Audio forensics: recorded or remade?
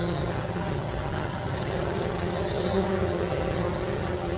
remade